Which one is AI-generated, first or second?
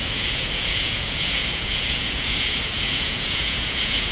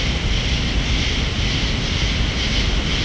first